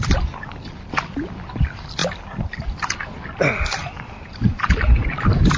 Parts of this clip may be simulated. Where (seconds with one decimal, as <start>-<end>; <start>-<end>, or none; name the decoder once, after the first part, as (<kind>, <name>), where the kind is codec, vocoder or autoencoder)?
none